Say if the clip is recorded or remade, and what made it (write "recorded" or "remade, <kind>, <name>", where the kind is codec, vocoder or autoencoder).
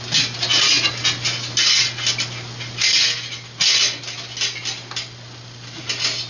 recorded